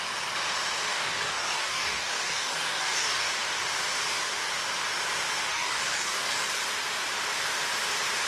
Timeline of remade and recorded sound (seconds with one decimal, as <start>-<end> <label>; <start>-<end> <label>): 0.0-0.9 recorded; 0.9-3.3 remade; 3.3-5.5 recorded; 5.5-6.5 remade; 6.5-8.3 recorded